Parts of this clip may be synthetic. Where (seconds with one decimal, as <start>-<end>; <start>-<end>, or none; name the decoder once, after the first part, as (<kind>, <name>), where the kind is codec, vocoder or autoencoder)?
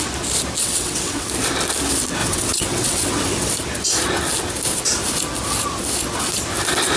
0.6-1.3 (vocoder, WaveNeXt); 2.2-3.5